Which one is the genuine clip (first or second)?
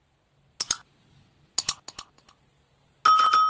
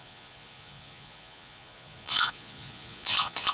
first